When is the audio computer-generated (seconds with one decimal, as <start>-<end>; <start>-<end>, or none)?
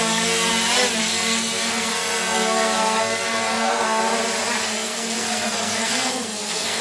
0.0-0.5; 1.0-4.0; 4.6-6.8